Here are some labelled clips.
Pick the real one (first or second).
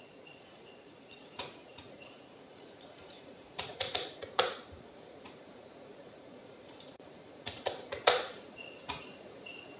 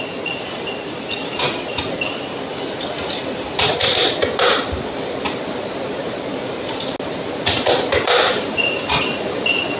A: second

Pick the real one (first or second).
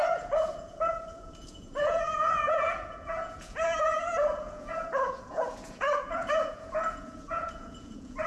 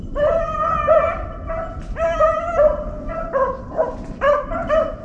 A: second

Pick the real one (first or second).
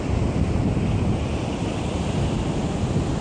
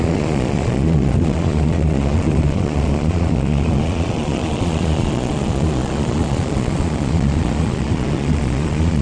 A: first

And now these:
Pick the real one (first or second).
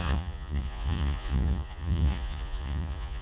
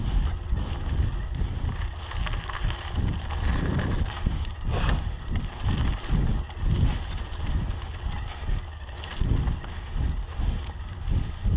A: second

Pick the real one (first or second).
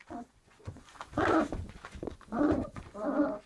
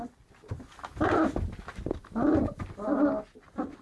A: second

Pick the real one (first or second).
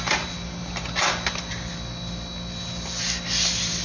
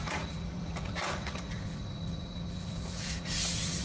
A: first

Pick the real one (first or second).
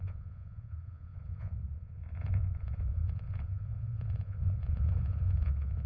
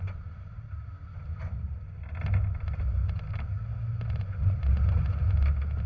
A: second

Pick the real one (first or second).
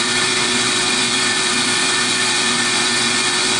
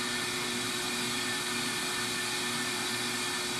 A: second